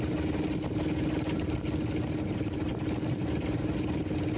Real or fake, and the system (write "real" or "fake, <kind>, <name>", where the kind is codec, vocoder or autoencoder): real